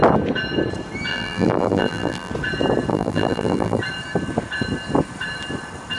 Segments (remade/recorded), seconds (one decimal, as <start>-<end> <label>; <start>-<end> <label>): 0.0-1.1 recorded; 1.1-2.3 remade; 2.3-2.9 recorded; 2.9-3.8 remade; 3.8-6.0 recorded

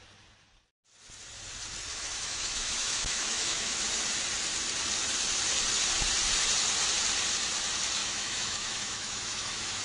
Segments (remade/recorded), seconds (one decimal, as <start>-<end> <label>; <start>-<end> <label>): 0.0-1.9 recorded; 1.9-3.8 remade; 3.8-8.0 recorded; 8.0-9.8 remade

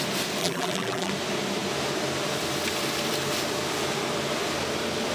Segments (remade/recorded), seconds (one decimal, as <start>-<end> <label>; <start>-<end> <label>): 0.0-0.4 recorded; 0.4-1.1 remade; 1.1-5.1 recorded

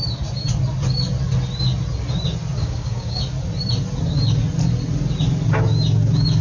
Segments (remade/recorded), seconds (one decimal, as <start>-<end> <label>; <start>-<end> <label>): 0.0-2.6 recorded; 2.6-3.2 remade; 3.2-6.4 recorded

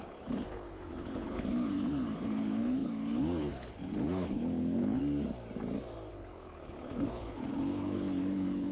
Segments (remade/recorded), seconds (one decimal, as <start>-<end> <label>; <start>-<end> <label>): 0.0-5.0 remade; 5.0-6.1 recorded; 6.1-8.7 remade

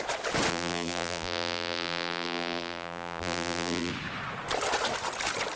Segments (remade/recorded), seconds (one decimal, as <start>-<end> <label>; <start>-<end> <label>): 0.0-0.5 recorded; 0.5-3.9 remade; 3.9-5.6 recorded

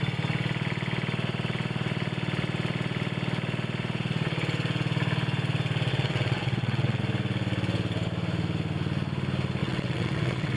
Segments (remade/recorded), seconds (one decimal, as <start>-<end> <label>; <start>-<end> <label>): 0.0-5.9 recorded; 5.9-7.0 remade; 7.0-9.6 recorded; 9.6-10.6 remade